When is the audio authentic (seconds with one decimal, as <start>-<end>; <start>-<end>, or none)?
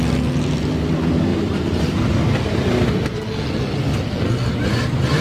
0.0-1.3; 2.9-4.4